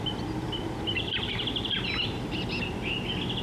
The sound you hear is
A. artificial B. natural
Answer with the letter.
B